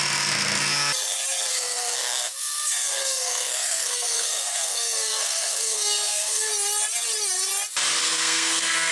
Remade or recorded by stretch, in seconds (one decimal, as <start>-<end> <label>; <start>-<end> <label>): 0.0-1.5 recorded; 1.5-6.5 remade; 6.5-8.0 recorded; 8.0-8.9 remade